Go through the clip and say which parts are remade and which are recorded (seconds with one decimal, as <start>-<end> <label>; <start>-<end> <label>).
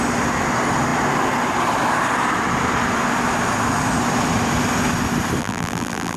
0.0-5.4 recorded; 5.4-6.2 remade